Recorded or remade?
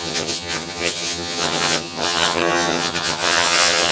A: remade